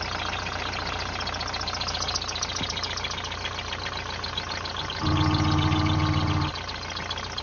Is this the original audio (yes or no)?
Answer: yes